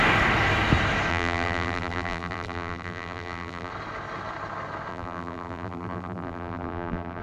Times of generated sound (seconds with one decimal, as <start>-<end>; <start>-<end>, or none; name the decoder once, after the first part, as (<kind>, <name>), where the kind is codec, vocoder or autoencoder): 1.1-3.7 (vocoder, BigVGAN v2); 4.9-7.2